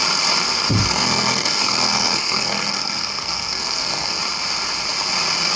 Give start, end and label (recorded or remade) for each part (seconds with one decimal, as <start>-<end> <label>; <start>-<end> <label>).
0.0-0.8 recorded; 0.8-4.2 remade; 4.2-5.6 recorded